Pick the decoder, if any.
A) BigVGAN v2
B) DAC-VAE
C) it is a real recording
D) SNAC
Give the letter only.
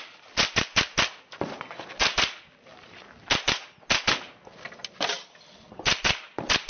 C